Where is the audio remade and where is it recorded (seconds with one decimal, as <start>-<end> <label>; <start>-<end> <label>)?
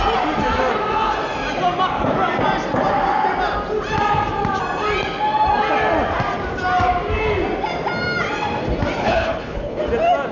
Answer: 0.0-9.0 recorded; 9.0-9.8 remade; 9.8-10.3 recorded